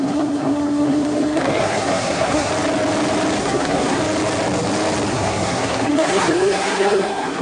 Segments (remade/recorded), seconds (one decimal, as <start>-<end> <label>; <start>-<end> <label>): 0.0-2.5 remade; 2.5-3.4 recorded; 3.4-4.0 remade; 4.0-5.1 recorded; 5.1-7.4 remade